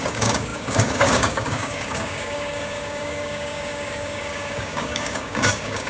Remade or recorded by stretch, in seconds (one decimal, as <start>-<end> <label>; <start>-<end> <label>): 0.0-5.9 remade